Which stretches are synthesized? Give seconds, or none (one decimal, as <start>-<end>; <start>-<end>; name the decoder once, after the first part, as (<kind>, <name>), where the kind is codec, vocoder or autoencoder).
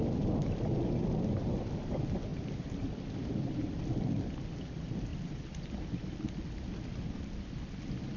2.3-3.8 (vocoder, BigVGAN v2)